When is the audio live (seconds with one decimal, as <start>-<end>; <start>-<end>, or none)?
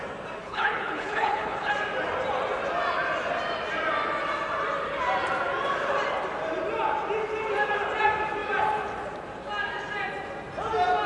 0.0-0.4; 1.7-11.1